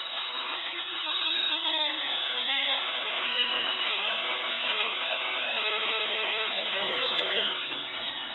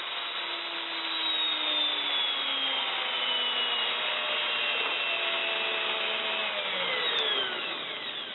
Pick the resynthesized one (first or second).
first